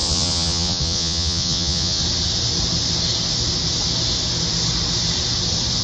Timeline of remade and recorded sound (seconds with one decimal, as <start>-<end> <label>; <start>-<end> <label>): 0.0-2.0 remade; 2.0-5.8 recorded